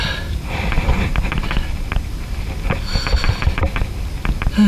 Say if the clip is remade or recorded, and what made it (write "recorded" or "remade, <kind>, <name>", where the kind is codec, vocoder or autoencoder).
recorded